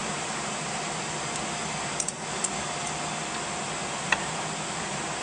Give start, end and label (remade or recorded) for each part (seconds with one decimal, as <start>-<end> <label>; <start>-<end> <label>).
0.0-0.8 remade; 0.8-5.2 recorded